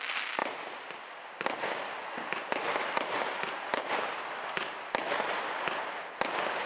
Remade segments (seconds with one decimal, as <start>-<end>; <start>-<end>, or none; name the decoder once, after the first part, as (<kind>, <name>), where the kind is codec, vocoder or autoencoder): none